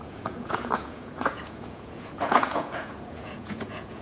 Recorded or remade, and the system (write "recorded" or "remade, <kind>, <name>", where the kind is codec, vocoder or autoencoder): remade, vocoder, Vocos